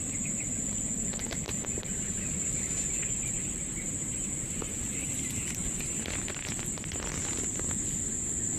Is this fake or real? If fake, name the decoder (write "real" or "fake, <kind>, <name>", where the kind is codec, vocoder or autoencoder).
real